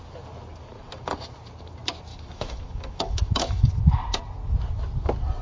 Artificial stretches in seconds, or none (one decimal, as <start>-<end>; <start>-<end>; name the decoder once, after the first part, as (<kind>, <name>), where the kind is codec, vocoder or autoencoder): 2.1-3.7 (autoencoder, DAC-VAE)

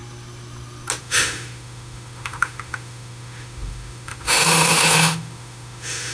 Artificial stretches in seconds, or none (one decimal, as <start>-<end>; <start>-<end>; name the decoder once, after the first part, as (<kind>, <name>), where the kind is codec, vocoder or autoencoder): 1.0-6.1 (autoencoder, DAC-VAE)